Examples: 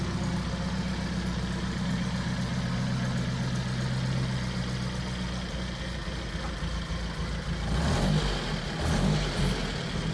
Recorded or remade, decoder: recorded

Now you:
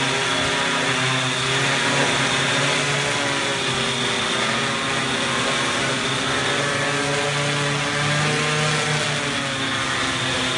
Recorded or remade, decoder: recorded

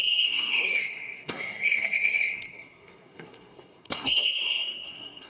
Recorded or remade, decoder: remade, codec, SNAC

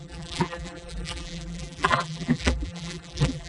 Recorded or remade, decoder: remade, vocoder, BigVGAN v2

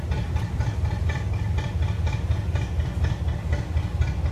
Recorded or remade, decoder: recorded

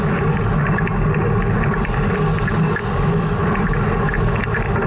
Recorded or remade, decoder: recorded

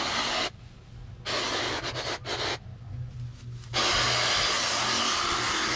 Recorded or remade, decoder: recorded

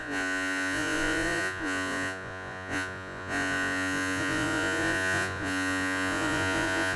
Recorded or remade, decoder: remade, vocoder, Vocos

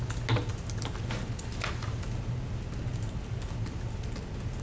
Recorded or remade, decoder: recorded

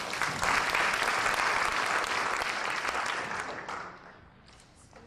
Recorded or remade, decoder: recorded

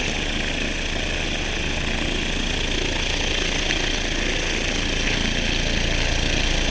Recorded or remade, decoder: recorded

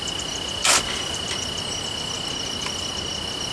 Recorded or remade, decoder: recorded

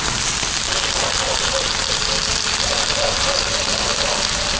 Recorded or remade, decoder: recorded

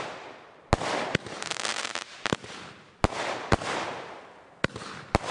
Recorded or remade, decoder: recorded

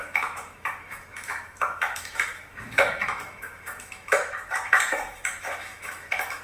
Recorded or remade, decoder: remade, autoencoder, DAC-VAE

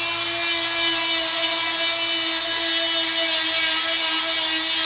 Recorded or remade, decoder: recorded